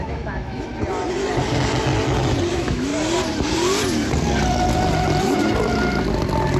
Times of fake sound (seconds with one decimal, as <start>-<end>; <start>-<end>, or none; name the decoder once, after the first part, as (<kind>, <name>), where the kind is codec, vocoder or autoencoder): 0.0-0.7 (autoencoder, DAC-VAE); 2.5-2.9